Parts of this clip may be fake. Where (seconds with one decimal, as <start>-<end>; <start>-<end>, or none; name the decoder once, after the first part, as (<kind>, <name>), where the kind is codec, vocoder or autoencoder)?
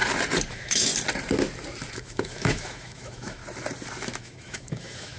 0.5-0.9 (autoencoder, DAC-VAE); 1.9-3.4; 4.2-5.2